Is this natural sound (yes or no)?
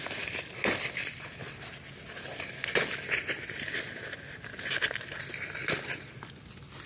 yes